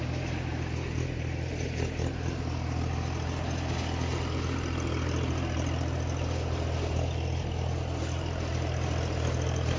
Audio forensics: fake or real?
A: real